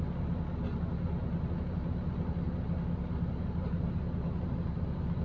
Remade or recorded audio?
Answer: recorded